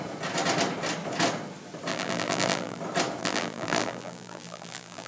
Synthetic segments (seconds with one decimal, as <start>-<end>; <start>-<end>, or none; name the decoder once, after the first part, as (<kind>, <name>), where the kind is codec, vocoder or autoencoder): 1.9-2.8 (vocoder, BigVGAN v2); 3.2-5.1